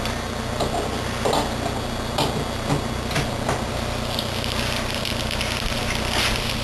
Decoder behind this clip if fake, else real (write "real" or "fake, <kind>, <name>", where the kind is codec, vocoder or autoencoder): real